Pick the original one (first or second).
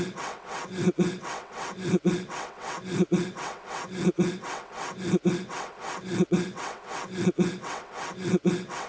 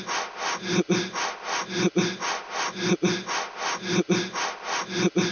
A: second